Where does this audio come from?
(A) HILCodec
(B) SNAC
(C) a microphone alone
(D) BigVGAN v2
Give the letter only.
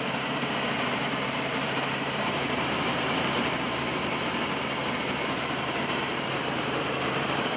D